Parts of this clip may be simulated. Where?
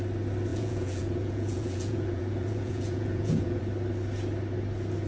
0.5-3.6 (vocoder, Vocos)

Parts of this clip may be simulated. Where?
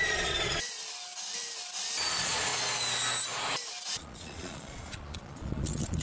0.0-0.8 (vocoder, Vocos); 2.1-2.5; 3.9-6.0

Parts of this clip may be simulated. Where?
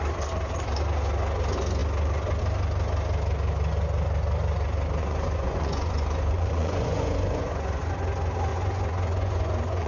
5.0-7.9 (vocoder, Vocos); 8.5-9.9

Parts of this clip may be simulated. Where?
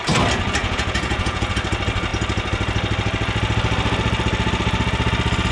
0.6-1.5 (vocoder, Vocos)